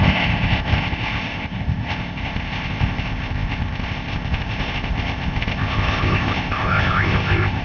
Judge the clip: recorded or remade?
remade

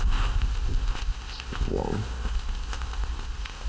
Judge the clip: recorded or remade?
remade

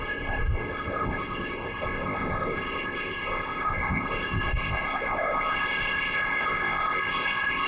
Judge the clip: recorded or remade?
remade